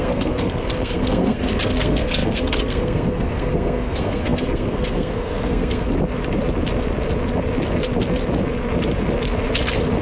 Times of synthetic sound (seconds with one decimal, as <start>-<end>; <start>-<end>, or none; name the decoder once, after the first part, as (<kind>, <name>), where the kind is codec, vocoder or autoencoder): 0.0-5.9 (codec, SNAC)